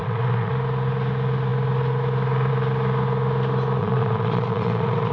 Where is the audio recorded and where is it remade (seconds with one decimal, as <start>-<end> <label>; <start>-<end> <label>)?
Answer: 0.0-0.5 remade; 0.5-3.8 recorded; 3.8-5.1 remade